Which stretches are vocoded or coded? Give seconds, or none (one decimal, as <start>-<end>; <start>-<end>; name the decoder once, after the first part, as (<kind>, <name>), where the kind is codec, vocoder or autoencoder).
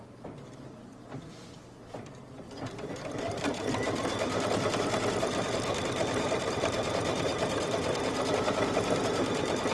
0.0-9.7 (vocoder, BigVGAN v2)